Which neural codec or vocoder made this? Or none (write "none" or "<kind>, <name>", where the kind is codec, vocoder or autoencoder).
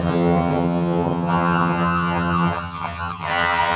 vocoder, HiFi-GAN